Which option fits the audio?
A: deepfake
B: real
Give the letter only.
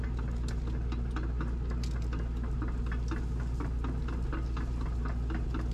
B